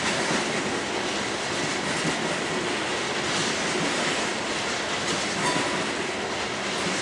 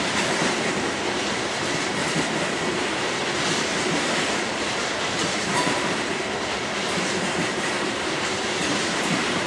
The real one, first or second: first